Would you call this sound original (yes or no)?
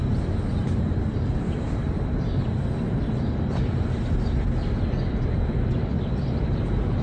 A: yes